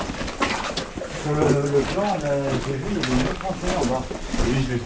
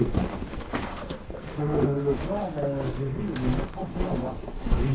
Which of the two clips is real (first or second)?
first